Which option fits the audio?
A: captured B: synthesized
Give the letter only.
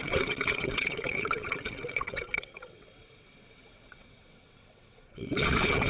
B